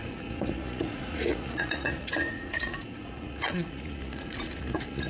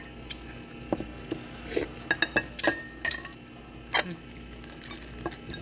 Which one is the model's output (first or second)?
first